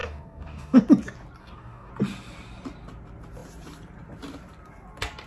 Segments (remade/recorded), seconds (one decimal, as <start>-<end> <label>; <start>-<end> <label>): 0.0-0.8 remade; 0.8-1.4 recorded; 1.4-1.9 remade; 1.9-5.3 recorded